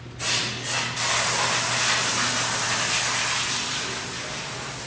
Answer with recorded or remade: recorded